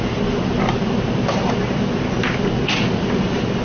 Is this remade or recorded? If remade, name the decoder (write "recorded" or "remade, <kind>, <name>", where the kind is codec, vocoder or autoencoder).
recorded